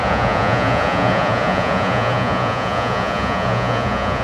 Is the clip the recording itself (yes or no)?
no